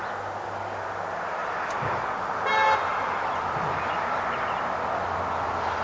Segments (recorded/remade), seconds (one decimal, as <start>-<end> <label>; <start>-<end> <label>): 0.0-1.4 recorded; 1.4-2.5 remade; 2.5-2.9 recorded; 2.9-3.4 remade; 3.4-5.8 recorded